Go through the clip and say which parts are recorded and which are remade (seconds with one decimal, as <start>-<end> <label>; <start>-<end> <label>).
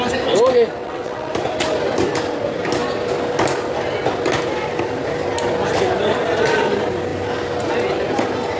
0.0-0.8 recorded; 0.8-1.3 remade; 1.3-8.6 recorded